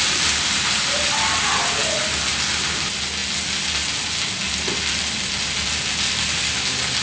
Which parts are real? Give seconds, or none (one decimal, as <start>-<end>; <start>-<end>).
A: 0.0-7.0